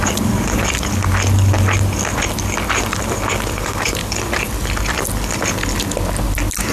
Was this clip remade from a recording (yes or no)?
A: no